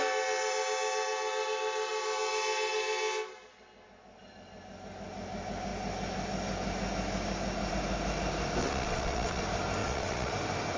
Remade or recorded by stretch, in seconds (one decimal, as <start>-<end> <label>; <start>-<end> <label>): 0.0-8.6 recorded; 8.6-9.4 remade; 9.4-9.8 recorded; 9.8-10.3 remade; 10.3-10.8 recorded